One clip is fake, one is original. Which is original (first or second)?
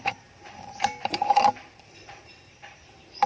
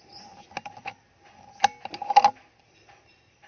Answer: second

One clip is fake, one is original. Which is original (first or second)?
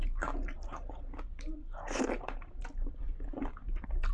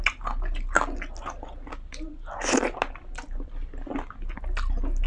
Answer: second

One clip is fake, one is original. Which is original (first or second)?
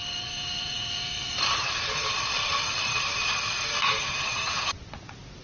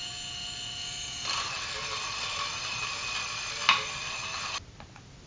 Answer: second